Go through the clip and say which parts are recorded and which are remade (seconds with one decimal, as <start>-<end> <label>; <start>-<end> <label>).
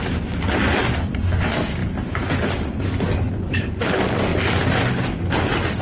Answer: 0.0-5.8 recorded